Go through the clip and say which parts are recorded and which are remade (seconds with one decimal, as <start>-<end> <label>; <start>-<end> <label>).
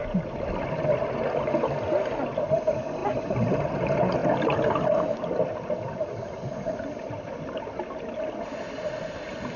0.0-4.2 recorded; 4.2-7.8 remade; 7.8-9.6 recorded